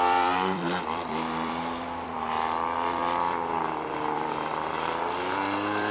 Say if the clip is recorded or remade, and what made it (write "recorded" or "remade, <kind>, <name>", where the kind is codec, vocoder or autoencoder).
remade, vocoder, BigVGAN v2